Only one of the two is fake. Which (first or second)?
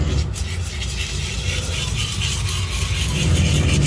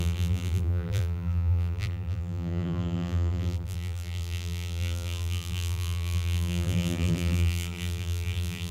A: second